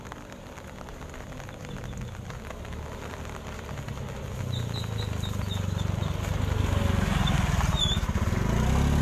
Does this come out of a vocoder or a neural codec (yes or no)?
no